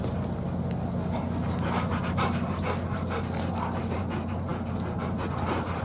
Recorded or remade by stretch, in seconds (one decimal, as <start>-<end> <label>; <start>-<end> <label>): 0.0-5.8 recorded